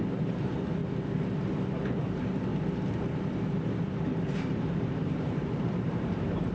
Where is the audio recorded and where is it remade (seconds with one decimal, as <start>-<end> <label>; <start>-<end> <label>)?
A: 0.0-0.8 remade; 0.8-2.0 recorded; 2.0-2.5 remade; 2.5-3.8 recorded; 3.8-6.5 remade